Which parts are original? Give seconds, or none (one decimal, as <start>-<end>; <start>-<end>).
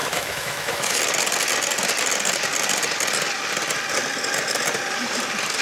1.0-5.6